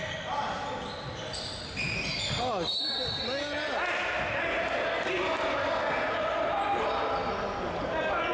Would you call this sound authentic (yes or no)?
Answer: yes